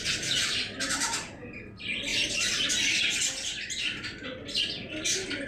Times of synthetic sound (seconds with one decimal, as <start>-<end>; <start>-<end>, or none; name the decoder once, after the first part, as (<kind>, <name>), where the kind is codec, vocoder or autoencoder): none

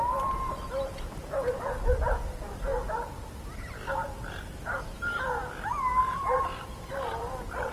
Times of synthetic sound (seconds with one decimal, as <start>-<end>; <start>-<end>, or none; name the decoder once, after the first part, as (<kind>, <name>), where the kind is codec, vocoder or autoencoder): 6.0-7.7 (vocoder, BigVGAN v2)

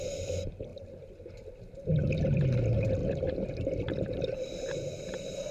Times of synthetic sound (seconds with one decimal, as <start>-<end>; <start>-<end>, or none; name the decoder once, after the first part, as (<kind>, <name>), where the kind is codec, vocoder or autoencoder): none

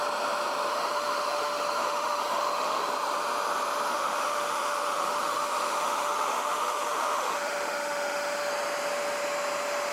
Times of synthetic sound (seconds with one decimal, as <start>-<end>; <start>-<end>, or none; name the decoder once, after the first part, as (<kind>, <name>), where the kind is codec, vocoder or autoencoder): 0.7-2.9 (autoencoder, DAC-VAE); 3.9-8.5

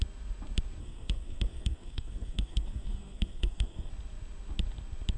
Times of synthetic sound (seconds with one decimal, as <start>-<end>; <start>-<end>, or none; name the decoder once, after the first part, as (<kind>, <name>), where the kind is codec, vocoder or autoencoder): 0.8-3.9 (codec, SNAC)

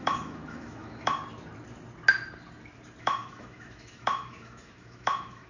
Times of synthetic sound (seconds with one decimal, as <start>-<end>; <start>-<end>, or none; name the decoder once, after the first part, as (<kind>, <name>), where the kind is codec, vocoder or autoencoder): 0.0-1.2 (autoencoder, DAC-VAE); 3.0-5.5